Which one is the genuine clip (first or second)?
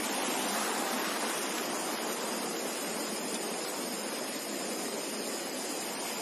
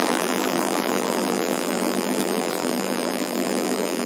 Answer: first